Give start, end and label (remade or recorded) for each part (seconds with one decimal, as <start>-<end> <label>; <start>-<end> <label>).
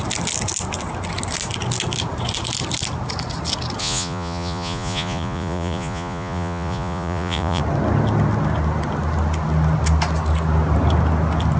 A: 0.0-3.8 recorded; 3.8-7.6 remade; 7.6-11.6 recorded